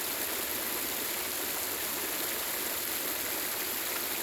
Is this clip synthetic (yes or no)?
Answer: no